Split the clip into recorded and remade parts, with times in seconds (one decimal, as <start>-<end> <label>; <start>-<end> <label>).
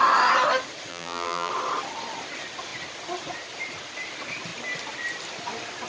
0.0-0.9 recorded; 0.9-1.5 remade; 1.5-5.9 recorded